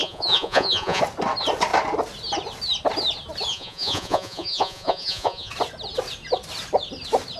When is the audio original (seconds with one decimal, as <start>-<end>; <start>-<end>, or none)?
1.0-3.5; 5.5-7.4